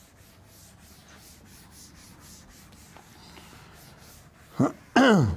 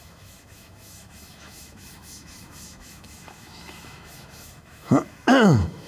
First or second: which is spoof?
second